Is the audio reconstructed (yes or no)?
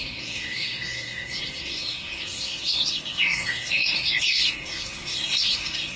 yes